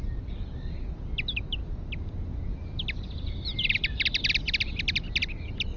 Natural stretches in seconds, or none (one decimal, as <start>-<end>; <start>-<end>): 0.0-5.8